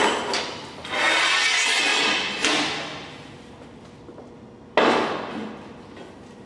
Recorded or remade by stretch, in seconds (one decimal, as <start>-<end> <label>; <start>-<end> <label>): 0.0-6.5 recorded